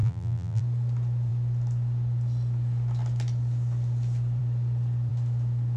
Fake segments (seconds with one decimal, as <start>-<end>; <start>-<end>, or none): 0.0-0.6